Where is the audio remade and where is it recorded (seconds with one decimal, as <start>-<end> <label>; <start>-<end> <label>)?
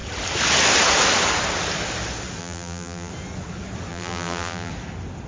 0.0-2.4 recorded; 2.4-3.1 remade; 3.1-3.9 recorded; 3.9-4.7 remade; 4.7-5.3 recorded